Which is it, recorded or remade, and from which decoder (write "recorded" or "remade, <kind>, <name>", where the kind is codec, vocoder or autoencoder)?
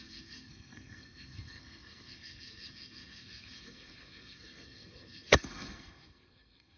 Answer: remade, codec, SNAC